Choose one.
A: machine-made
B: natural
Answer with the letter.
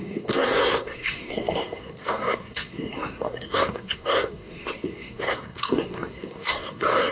A